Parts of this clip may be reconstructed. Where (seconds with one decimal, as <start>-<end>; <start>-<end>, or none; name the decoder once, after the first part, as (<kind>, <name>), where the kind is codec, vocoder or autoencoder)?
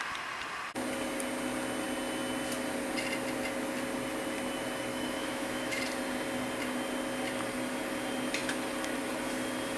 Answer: 4.9-5.8 (autoencoder, DAC-VAE)